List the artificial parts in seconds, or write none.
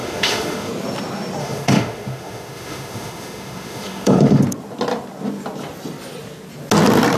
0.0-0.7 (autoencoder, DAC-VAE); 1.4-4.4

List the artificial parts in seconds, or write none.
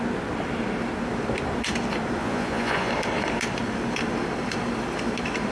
2.2-2.9 (vocoder, Vocos)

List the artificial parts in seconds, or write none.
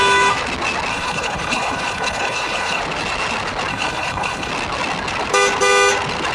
0.9-2.8 (codec, HILCodec); 3.7-4.5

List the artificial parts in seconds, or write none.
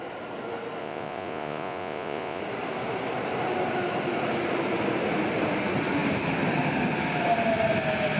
0.8-2.4 (vocoder, Vocos)